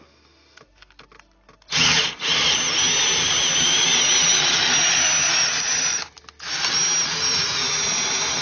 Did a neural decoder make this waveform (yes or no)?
no